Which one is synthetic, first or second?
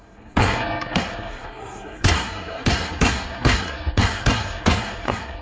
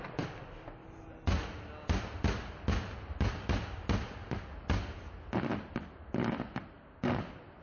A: first